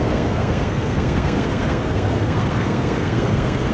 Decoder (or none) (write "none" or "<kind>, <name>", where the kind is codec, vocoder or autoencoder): codec, SNAC